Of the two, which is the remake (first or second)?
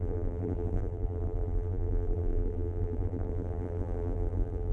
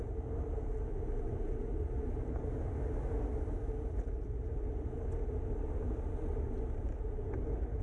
first